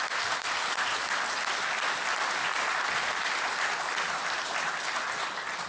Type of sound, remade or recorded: recorded